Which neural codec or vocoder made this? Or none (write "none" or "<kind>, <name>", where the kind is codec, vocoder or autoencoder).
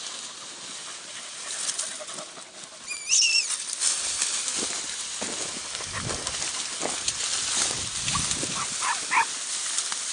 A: none